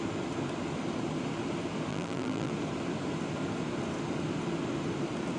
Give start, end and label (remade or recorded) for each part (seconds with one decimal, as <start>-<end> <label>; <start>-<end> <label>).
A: 0.0-1.9 recorded; 1.9-2.5 remade; 2.5-5.4 recorded